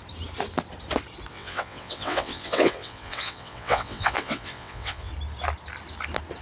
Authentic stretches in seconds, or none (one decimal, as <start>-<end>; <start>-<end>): 0.0-1.3; 5.1-6.4